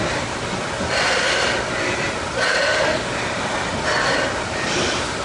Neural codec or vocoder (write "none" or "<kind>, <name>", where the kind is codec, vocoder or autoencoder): none